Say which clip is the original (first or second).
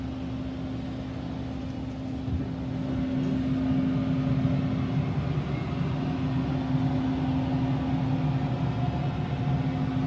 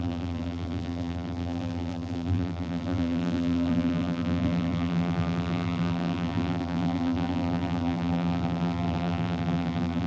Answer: first